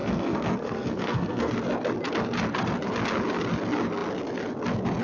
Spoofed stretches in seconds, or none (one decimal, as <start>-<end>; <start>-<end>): 0.0-1.5